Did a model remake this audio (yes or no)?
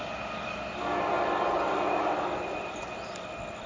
no